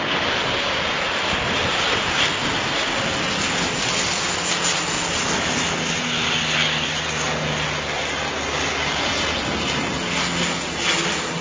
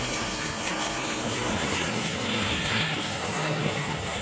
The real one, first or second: first